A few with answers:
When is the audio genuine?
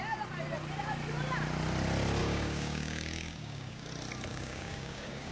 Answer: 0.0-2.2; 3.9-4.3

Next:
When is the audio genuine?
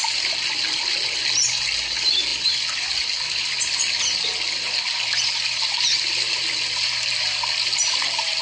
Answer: 0.0-8.4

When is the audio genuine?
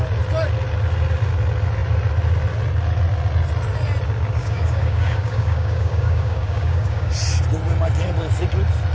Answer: 0.0-4.4; 7.1-8.9